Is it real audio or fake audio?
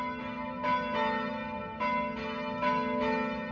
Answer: real